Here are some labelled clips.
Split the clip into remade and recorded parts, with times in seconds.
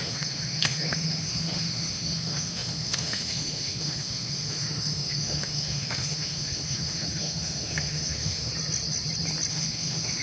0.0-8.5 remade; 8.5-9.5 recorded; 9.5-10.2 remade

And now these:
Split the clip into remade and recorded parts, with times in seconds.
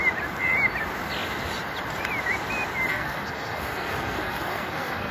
0.0-2.9 recorded; 2.9-5.1 remade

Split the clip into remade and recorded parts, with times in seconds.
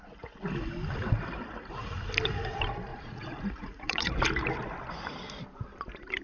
0.0-2.9 recorded; 2.9-4.1 remade; 4.1-6.2 recorded